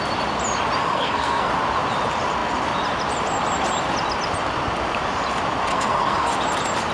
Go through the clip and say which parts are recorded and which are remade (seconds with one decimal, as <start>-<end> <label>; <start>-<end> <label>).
0.0-0.8 recorded; 0.8-1.5 remade; 1.5-5.7 recorded; 5.7-6.3 remade; 6.3-6.9 recorded